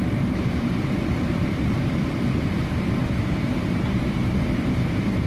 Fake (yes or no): yes